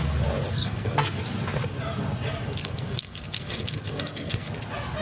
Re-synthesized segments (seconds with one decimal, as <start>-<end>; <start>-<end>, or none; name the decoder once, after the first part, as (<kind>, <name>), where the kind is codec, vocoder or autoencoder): 0.5-1.2 (codec, SNAC); 2.6-4.5